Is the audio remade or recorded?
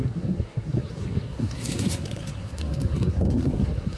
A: remade